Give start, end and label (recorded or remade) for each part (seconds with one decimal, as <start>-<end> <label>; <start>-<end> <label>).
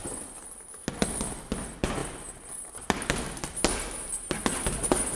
0.0-5.2 recorded